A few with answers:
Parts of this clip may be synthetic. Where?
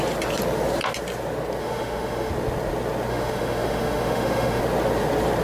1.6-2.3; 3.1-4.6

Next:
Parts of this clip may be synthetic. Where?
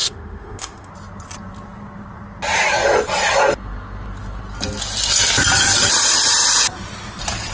0.0-0.9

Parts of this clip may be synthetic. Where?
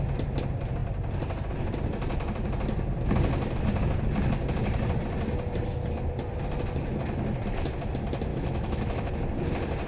8.3-9.1